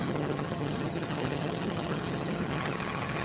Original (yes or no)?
no